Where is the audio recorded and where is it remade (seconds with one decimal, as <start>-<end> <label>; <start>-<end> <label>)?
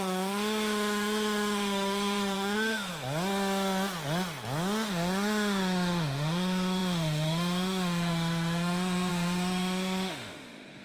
0.0-2.9 remade; 2.9-4.9 recorded; 4.9-10.8 remade